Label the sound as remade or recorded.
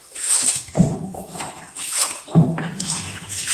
remade